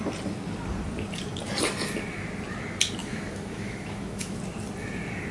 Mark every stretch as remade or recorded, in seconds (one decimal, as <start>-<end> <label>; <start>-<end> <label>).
0.0-3.0 recorded; 3.0-4.4 remade; 4.4-5.3 recorded